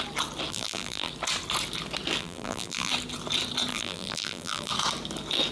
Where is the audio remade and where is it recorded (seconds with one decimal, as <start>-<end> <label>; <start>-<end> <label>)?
0.0-0.5 recorded; 0.5-1.1 remade; 1.1-2.2 recorded; 2.2-2.9 remade; 2.9-3.7 recorded; 3.7-4.7 remade; 4.7-5.5 recorded